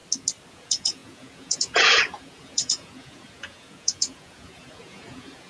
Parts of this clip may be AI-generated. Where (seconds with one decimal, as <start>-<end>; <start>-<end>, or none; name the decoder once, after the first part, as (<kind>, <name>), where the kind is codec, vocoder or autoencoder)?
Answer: 0.5-5.5 (vocoder, Vocos)